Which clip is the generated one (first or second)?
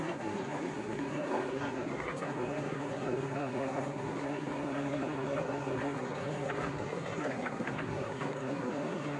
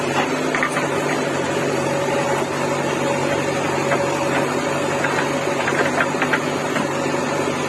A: first